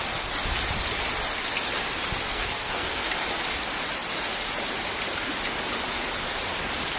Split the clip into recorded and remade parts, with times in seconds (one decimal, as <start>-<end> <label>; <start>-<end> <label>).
0.0-2.3 recorded; 2.3-3.1 remade; 3.1-7.0 recorded

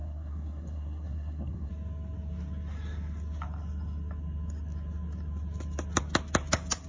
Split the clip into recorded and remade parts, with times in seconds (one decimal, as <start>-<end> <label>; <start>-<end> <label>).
0.0-1.7 remade; 1.7-6.9 recorded

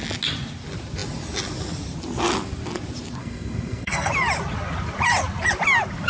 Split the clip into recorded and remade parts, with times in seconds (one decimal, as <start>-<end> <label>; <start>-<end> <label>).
0.0-3.2 recorded; 3.2-4.1 remade; 4.1-6.1 recorded

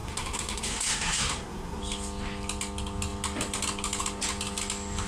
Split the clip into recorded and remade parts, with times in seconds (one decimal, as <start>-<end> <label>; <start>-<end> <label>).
0.0-1.8 remade; 1.8-5.1 recorded

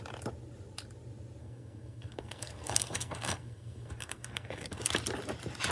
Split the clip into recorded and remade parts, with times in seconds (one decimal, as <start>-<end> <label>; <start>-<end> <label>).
0.0-1.4 recorded; 1.4-4.8 remade; 4.8-5.7 recorded

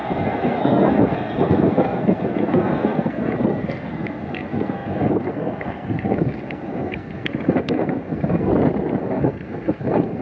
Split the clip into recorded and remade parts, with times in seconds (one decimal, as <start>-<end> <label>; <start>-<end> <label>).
0.0-8.5 remade; 8.5-9.0 recorded; 9.0-10.2 remade

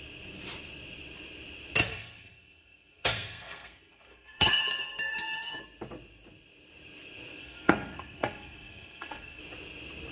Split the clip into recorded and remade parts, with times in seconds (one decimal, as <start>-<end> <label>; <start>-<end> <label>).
0.0-1.9 recorded; 1.9-5.6 remade; 5.6-7.4 recorded; 7.4-9.4 remade; 9.4-10.1 recorded

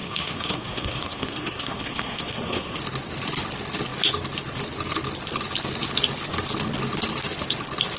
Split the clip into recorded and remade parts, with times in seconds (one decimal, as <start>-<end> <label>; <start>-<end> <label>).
0.0-2.8 remade; 2.8-8.0 recorded